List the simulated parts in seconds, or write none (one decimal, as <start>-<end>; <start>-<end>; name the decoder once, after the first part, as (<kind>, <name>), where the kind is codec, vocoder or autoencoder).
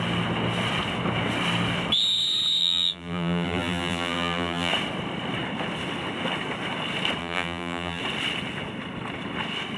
2.6-4.7 (vocoder, BigVGAN v2); 7.2-8.0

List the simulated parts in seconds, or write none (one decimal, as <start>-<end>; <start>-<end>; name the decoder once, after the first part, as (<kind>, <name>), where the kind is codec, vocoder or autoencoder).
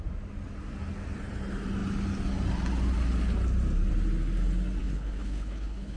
4.8-6.0 (codec, HILCodec)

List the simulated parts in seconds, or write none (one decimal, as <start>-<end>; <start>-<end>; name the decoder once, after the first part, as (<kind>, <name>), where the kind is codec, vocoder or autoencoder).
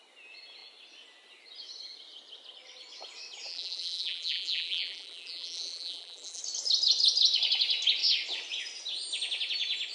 3.5-6.4 (vocoder, BigVGAN v2)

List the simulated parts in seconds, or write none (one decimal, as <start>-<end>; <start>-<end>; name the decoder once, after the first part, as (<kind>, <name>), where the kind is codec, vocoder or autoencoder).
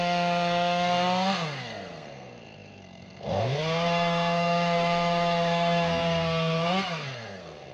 0.0-7.7 (codec, SNAC)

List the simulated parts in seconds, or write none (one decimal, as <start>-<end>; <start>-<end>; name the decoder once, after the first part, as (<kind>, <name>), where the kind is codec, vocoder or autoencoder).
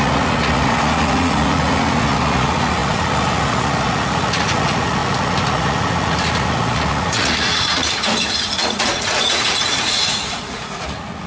0.0-11.3 (vocoder, Vocos)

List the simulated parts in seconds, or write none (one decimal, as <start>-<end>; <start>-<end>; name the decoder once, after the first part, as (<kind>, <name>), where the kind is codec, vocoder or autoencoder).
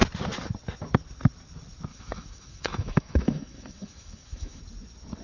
1.9-4.6 (autoencoder, DAC-VAE)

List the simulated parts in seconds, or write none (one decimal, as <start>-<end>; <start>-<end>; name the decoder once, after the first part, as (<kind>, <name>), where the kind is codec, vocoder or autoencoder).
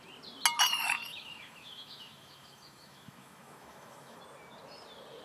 1.1-4.2 (autoencoder, DAC-VAE)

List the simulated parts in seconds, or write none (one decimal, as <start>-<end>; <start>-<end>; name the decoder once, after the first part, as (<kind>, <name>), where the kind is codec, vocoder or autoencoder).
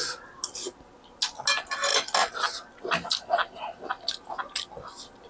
none